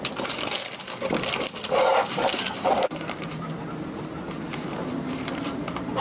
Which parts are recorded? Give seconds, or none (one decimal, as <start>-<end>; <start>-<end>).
0.0-1.9; 5.4-6.0